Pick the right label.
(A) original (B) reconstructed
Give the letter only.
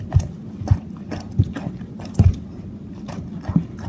A